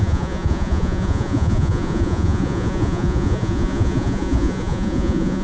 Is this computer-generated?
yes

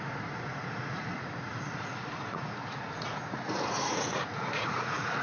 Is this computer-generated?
yes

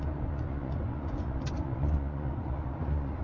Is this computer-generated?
yes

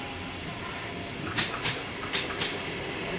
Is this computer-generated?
no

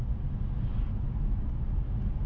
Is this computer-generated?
no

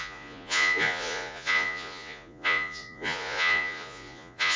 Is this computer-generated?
yes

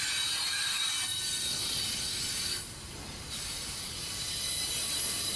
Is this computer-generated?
no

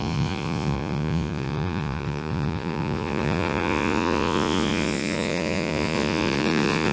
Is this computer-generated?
yes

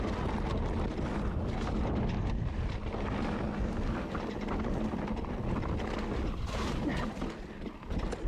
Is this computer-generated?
no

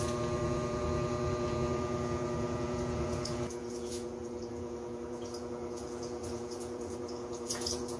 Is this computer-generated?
yes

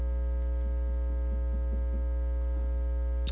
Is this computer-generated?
no